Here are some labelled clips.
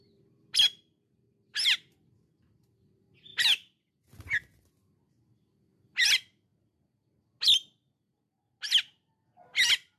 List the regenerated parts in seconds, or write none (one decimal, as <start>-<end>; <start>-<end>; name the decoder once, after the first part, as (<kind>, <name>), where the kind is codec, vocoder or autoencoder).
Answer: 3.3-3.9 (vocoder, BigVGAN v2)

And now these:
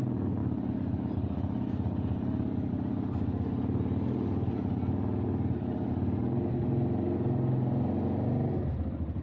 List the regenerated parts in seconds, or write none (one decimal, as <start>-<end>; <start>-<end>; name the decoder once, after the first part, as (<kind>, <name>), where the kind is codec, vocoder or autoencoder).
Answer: none

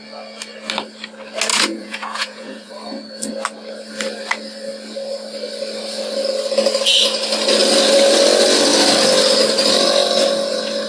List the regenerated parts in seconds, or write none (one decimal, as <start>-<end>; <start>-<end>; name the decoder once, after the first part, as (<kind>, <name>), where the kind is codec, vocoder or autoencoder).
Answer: 1.5-2.7 (vocoder, Vocos)

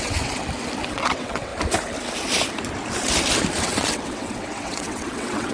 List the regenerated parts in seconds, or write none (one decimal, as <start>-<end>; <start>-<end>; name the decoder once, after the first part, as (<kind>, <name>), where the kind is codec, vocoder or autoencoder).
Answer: 0.0-0.4 (vocoder, WaveNeXt); 0.9-1.5; 3.6-5.5

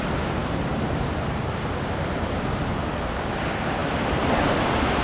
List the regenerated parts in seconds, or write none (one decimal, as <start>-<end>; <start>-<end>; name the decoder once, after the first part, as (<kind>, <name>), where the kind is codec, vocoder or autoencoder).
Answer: 0.4-2.6 (vocoder, BigVGAN v2)

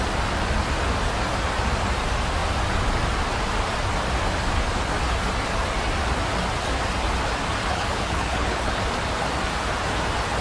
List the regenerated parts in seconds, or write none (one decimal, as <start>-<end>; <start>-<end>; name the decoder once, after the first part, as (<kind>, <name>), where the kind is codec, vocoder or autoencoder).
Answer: 7.7-8.8 (codec, HILCodec)